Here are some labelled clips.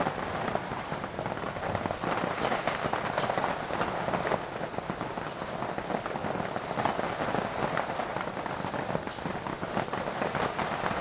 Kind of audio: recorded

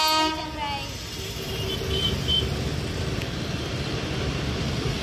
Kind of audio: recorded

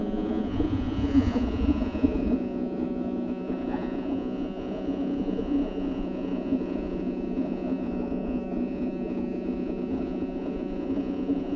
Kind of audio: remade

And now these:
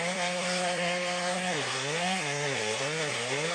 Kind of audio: remade